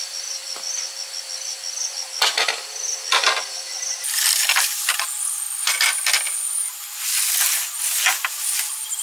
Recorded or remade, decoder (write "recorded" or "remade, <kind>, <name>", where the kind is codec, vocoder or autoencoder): recorded